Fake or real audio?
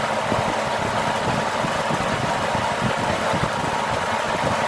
real